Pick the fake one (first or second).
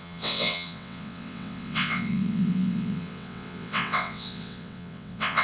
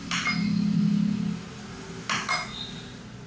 first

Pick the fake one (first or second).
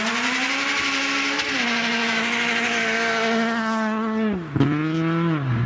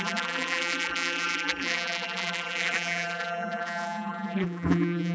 second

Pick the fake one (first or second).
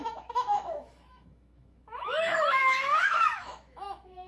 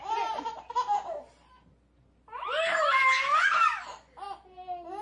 first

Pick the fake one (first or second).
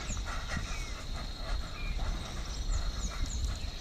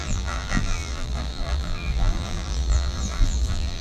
second